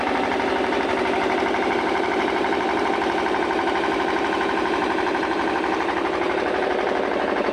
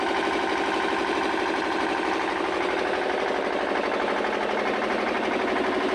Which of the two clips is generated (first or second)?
first